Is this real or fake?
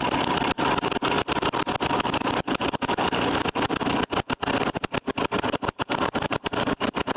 real